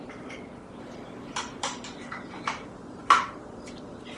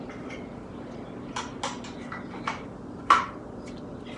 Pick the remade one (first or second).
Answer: first